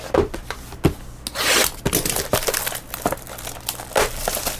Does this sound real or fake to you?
real